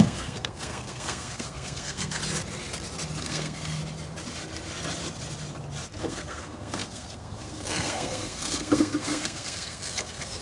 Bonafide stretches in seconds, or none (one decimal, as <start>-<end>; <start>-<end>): 2.2-3.2; 3.8-6.0